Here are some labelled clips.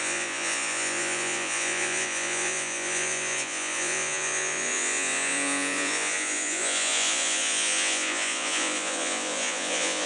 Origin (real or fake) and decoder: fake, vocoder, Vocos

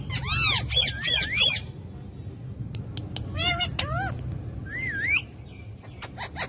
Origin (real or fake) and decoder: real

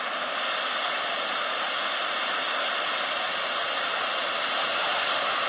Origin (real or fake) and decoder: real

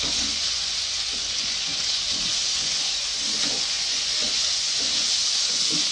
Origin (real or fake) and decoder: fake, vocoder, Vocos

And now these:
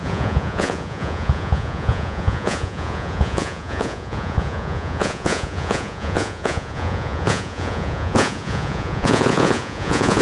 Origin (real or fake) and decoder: fake, vocoder, Vocos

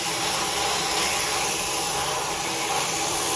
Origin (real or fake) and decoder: real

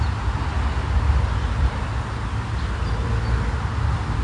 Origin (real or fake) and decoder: real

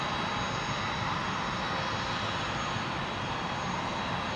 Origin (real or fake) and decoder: real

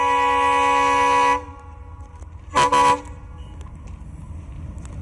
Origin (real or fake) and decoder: real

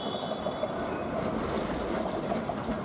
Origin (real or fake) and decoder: real